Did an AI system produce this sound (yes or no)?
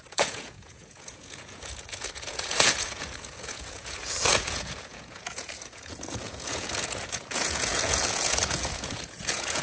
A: yes